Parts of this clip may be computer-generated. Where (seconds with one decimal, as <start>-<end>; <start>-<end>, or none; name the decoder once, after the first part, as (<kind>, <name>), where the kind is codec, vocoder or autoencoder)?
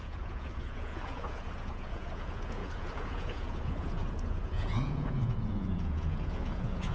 0.0-6.9 (vocoder, Vocos)